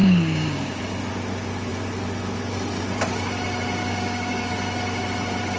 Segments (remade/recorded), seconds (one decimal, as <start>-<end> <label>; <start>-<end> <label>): 0.0-0.8 remade; 0.8-3.8 recorded; 3.8-4.5 remade; 4.5-5.6 recorded